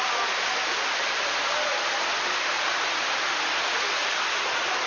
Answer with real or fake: real